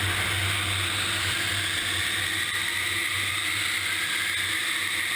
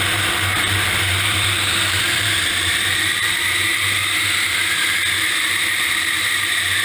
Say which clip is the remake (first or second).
second